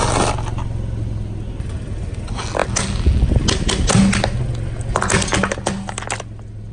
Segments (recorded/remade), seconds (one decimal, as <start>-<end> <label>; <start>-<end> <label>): 0.0-6.7 recorded